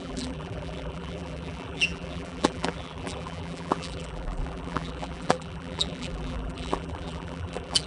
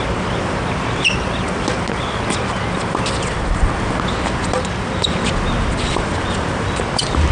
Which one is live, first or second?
second